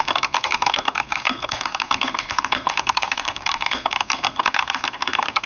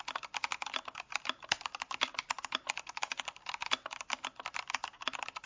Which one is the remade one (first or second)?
first